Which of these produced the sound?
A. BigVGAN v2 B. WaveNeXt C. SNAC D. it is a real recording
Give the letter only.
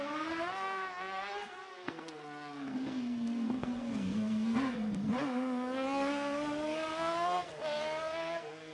C